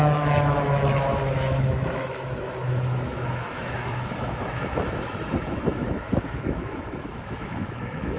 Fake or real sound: fake